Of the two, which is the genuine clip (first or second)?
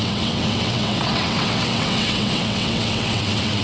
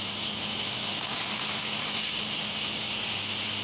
second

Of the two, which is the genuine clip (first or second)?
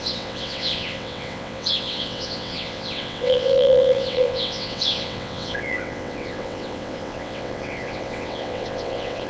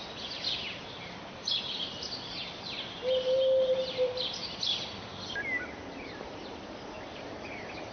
second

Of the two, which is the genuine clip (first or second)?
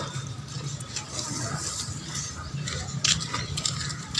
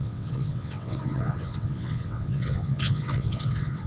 first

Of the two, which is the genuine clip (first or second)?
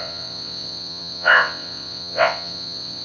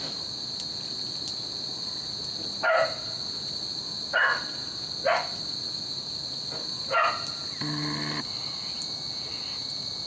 second